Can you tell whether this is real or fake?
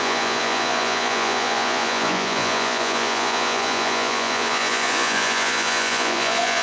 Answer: fake